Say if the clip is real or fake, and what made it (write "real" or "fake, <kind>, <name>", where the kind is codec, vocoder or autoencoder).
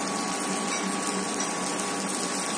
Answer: real